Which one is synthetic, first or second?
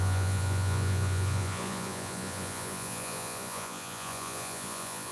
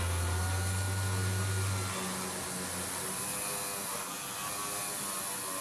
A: first